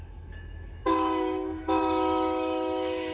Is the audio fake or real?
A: fake